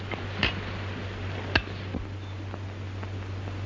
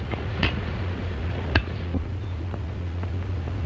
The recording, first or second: first